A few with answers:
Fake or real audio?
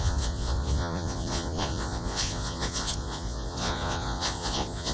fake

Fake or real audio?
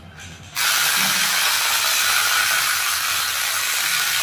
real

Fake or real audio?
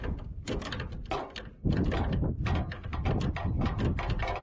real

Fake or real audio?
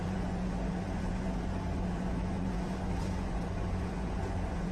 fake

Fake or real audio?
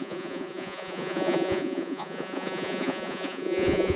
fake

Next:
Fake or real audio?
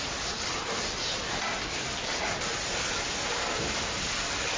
real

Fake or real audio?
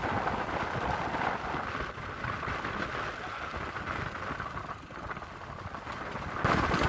real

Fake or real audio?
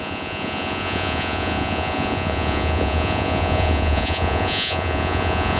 fake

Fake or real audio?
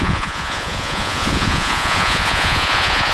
fake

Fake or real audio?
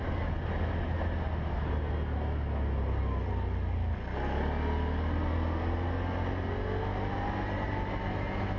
real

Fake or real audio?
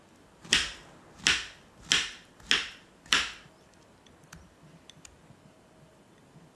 real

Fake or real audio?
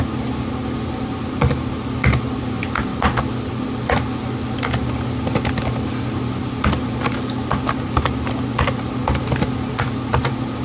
real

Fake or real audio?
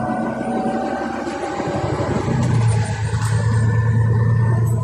real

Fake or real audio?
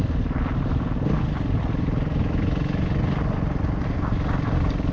real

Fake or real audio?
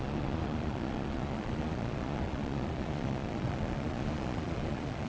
fake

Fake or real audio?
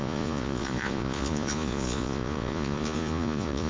fake